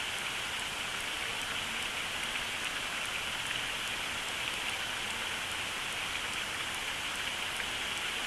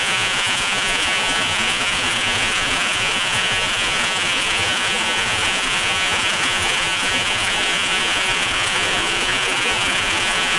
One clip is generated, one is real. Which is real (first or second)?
first